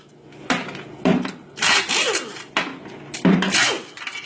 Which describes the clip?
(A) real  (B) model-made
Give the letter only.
A